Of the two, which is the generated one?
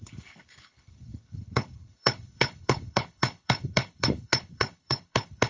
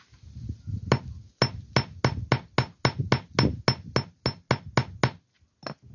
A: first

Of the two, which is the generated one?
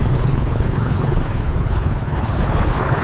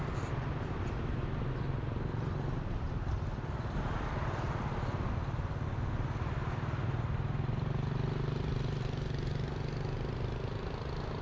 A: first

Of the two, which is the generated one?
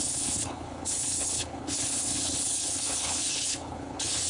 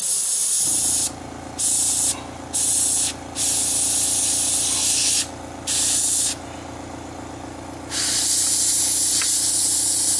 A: first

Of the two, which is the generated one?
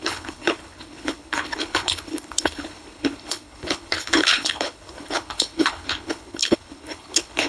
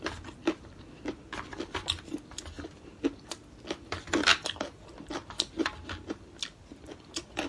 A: first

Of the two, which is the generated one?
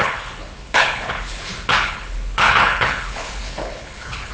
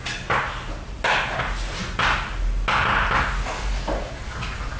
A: first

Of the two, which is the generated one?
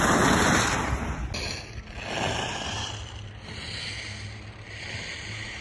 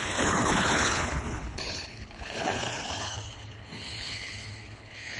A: second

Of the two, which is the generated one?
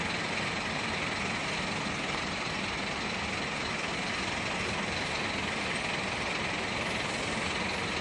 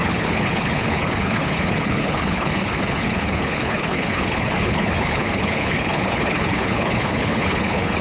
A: second